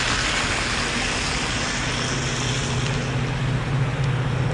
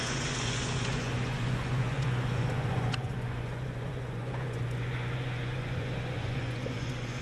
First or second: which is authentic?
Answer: first